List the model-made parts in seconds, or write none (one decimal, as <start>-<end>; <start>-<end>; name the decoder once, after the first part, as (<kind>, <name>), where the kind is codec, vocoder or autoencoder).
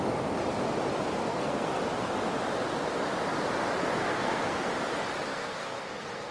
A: 1.2-1.8 (codec, SNAC); 4.0-4.7; 5.3-6.3